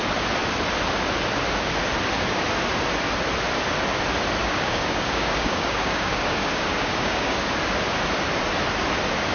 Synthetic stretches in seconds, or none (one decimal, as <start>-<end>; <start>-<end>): 4.4-7.6